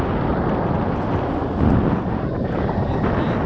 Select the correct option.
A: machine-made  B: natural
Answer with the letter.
B